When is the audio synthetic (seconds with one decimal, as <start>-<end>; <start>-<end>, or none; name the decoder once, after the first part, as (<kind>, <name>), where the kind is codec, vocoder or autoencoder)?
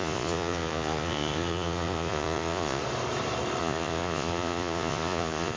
0.0-2.8 (vocoder, Vocos); 3.6-5.6